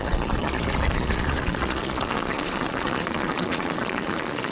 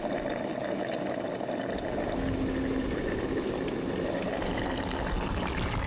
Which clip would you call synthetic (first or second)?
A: first